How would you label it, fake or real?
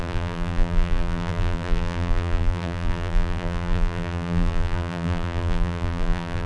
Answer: fake